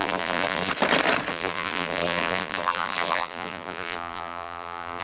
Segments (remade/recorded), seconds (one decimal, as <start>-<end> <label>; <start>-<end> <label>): 0.0-0.7 remade; 0.7-1.3 recorded; 1.3-5.0 remade